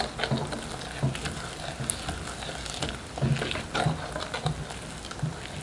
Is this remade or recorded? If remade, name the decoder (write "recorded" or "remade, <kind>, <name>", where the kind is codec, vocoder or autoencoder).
recorded